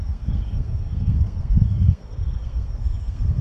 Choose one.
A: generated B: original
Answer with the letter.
A